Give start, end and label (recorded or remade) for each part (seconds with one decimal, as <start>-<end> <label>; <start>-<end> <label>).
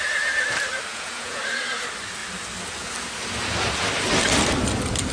0.0-0.9 recorded; 0.9-1.4 remade; 1.4-5.1 recorded